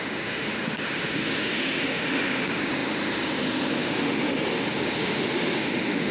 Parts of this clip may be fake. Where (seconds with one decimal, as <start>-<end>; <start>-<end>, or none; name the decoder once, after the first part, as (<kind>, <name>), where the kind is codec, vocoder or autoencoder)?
0.0-6.1 (autoencoder, DAC-VAE)